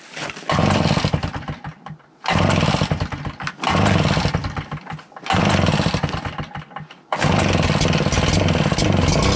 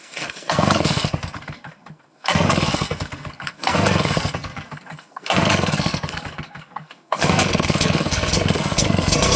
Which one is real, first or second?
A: first